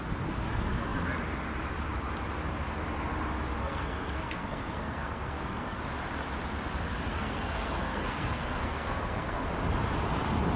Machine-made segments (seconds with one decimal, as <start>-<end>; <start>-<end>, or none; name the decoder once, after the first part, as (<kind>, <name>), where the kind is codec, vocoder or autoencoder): 3.6-5.8 (codec, SNAC); 7.1-9.5